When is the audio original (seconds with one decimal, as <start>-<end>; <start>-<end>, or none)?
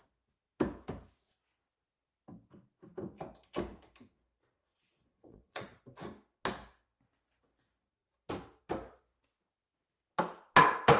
0.0-4.7; 5.8-11.0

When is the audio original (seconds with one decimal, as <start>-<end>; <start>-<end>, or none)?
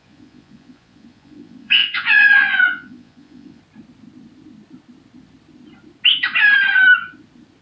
3.6-7.6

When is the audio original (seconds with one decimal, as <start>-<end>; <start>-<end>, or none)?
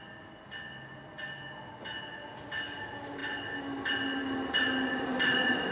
0.0-5.7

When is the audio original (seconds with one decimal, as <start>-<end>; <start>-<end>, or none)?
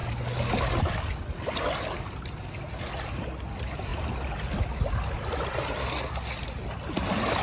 0.0-7.4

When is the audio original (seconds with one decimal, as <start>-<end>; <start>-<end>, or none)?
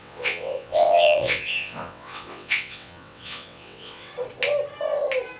4.1-5.4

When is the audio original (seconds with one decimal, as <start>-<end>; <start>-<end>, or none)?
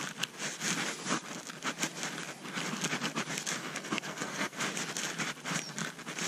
0.0-3.6; 4.6-6.3